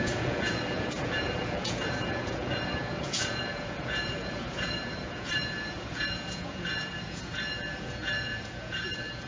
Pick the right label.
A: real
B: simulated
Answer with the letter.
B